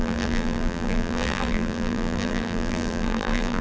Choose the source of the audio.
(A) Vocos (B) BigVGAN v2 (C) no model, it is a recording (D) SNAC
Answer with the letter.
B